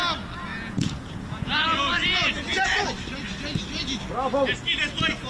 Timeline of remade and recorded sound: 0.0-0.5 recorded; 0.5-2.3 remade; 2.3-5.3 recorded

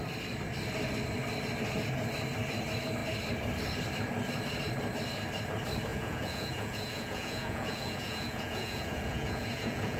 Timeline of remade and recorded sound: 0.0-5.9 recorded; 5.9-10.0 remade

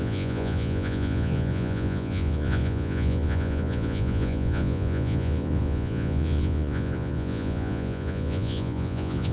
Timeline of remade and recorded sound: 0.0-9.3 remade